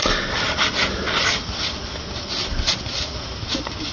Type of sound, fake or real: real